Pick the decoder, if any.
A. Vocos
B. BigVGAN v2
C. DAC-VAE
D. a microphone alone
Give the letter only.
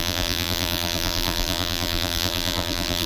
B